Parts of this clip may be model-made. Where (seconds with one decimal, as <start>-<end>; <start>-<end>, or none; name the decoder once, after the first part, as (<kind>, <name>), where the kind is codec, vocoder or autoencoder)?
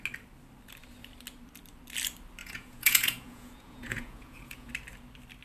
2.4-4.7 (vocoder, Vocos)